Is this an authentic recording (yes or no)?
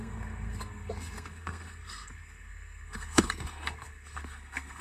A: no